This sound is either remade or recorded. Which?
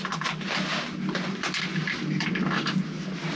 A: recorded